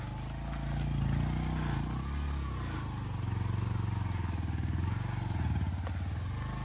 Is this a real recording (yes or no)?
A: yes